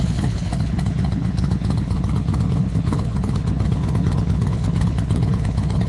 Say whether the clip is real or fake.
fake